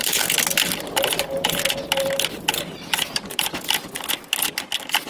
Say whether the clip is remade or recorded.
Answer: recorded